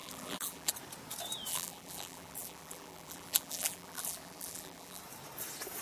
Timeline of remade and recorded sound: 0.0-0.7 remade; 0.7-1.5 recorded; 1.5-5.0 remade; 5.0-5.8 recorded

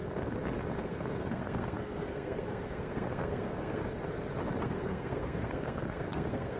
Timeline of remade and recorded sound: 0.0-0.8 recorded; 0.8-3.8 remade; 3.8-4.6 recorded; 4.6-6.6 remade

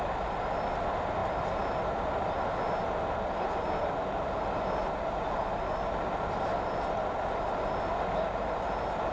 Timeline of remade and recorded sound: 0.0-9.1 recorded

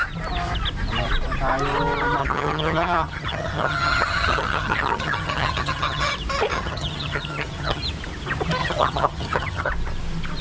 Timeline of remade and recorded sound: 0.0-2.2 recorded; 2.2-6.1 remade; 6.1-6.5 recorded; 6.5-7.8 remade; 7.8-8.6 recorded; 8.6-9.7 remade; 9.7-10.4 recorded

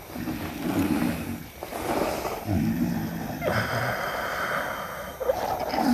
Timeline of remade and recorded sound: 0.0-5.9 recorded

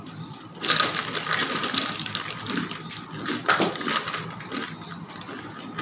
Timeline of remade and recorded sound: 0.0-3.4 recorded; 3.4-4.3 remade; 4.3-5.8 recorded

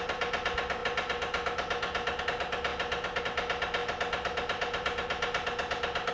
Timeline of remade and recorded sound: 0.0-6.1 recorded

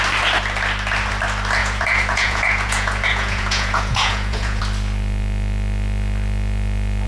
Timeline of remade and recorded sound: 0.0-1.6 recorded; 1.6-4.6 remade; 4.6-7.1 recorded